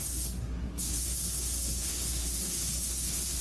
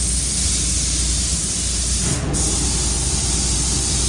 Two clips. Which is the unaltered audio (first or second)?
second